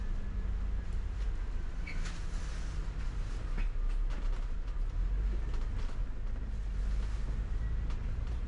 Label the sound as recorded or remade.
recorded